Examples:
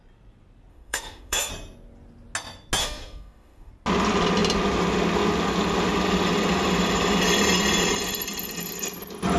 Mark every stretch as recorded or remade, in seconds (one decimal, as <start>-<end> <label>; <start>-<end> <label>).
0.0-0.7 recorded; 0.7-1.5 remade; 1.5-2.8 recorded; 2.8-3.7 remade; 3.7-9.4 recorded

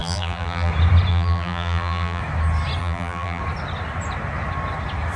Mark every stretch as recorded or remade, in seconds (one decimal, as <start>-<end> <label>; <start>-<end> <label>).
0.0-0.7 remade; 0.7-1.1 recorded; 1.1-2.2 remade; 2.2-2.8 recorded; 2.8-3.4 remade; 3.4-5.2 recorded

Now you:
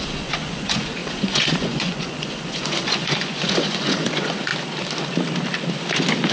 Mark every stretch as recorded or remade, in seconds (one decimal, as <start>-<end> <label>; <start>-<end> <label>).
0.0-4.5 remade; 4.5-6.3 recorded